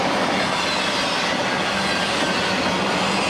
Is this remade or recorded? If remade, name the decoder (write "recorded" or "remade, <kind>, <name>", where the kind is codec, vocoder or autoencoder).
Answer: recorded